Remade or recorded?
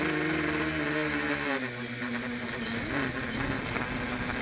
recorded